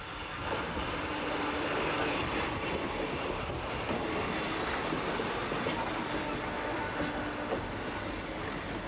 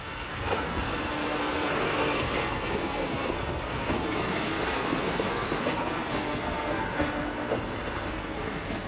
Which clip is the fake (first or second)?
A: second